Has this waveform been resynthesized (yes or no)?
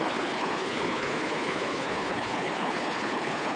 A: yes